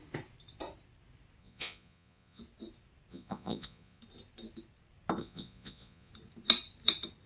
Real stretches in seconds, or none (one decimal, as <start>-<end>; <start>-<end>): 0.0-1.4; 2.4-3.1; 4.0-5.2; 6.1-7.3